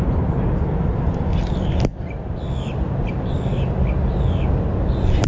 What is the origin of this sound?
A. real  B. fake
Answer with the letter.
A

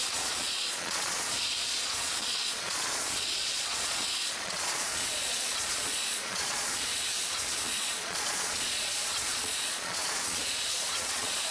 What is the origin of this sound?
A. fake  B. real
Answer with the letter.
A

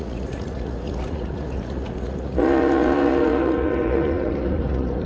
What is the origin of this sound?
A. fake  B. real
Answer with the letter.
A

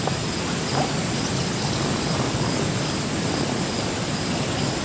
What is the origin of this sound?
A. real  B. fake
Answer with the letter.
A